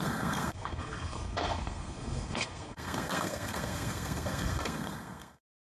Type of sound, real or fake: fake